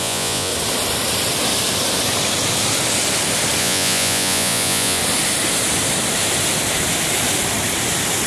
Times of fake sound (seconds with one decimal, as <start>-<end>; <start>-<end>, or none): 0.0-0.5; 3.6-5.0